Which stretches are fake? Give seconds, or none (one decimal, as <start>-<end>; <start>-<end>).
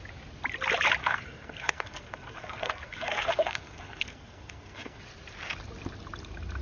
1.0-5.0